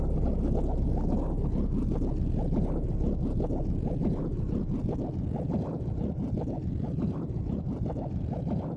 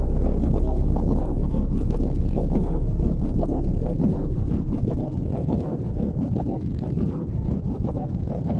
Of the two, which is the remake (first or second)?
second